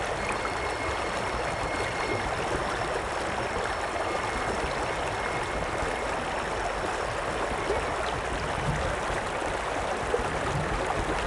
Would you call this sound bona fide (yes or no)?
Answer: yes